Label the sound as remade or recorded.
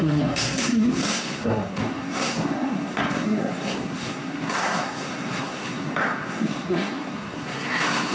remade